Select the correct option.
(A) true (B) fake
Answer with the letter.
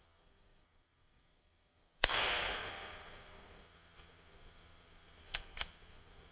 B